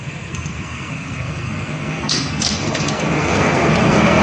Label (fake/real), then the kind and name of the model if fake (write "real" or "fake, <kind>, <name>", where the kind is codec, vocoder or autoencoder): fake, codec, SNAC